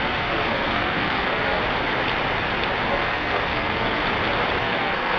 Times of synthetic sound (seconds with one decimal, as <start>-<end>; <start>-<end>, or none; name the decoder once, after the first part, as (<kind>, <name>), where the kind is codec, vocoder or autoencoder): 0.0-1.6 (codec, SNAC); 2.9-4.0; 4.6-5.2

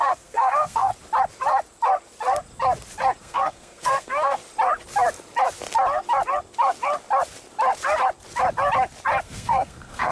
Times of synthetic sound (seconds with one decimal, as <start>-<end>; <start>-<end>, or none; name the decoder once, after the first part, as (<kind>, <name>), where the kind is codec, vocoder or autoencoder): 0.0-0.9 (codec, SNAC); 3.2-4.4; 9.2-10.1

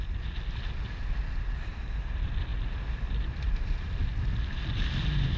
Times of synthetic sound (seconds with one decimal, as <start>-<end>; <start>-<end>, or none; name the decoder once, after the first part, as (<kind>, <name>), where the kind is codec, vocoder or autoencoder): none

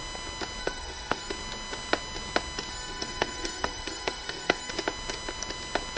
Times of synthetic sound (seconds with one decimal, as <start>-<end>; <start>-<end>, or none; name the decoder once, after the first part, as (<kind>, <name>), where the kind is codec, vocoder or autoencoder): 0.6-1.3 (codec, SNAC); 2.7-4.7

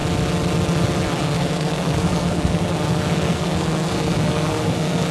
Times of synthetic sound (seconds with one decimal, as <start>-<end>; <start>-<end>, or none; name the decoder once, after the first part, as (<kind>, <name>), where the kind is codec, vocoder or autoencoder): 1.2-5.1 (codec, SNAC)